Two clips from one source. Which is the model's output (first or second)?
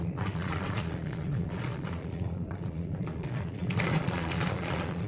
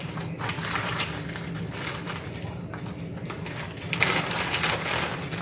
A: first